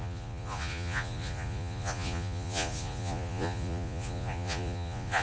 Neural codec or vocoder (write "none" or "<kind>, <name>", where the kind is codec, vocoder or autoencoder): vocoder, Vocos